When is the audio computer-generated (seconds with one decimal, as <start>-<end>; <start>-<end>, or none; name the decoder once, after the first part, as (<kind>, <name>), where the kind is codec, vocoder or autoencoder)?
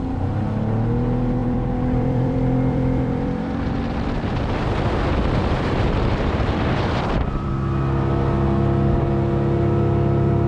1.4-3.7 (vocoder, BigVGAN v2); 5.4-7.5